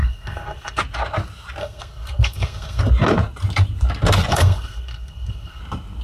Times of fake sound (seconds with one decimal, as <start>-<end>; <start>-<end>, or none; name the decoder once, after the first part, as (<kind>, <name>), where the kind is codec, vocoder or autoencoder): 0.0-0.8 (codec, SNAC); 1.6-2.8; 4.3-5.6